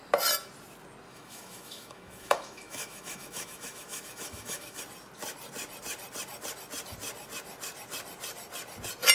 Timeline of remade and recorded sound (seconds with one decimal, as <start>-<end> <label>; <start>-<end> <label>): 0.0-1.1 recorded; 1.1-4.8 remade; 4.8-9.1 recorded